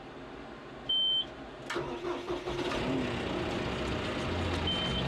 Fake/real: real